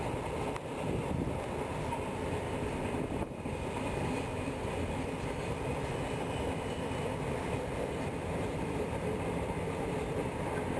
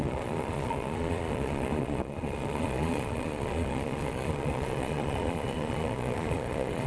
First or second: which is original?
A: first